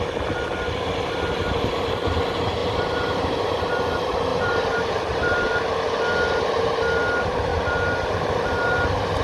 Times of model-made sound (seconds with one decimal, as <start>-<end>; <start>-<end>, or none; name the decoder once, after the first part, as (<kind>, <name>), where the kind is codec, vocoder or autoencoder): 2.6-3.6 (vocoder, BigVGAN v2); 4.3-5.5; 7.5-8.2